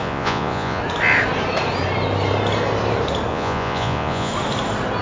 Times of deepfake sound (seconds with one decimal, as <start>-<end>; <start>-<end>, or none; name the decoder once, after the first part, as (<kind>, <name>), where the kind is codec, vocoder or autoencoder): 0.0-0.8 (vocoder, Vocos); 3.3-4.3